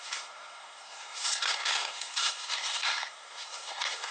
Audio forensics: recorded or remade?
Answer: remade